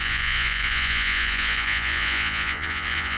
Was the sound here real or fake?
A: fake